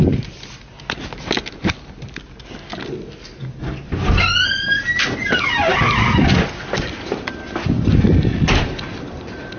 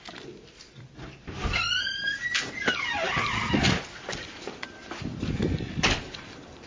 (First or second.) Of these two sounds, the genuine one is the first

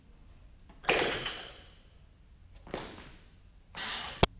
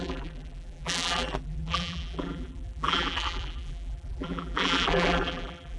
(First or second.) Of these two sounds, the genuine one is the first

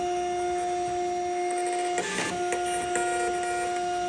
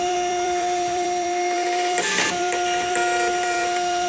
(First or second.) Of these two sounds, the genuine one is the first